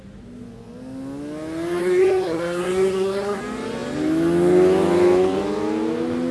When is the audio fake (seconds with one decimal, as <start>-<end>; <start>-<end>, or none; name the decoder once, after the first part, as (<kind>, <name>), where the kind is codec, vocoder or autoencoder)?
1.8-3.4 (codec, SNAC)